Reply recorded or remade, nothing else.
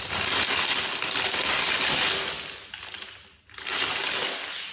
recorded